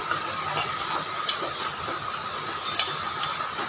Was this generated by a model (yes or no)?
no